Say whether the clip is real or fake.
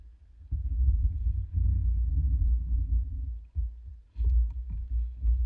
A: real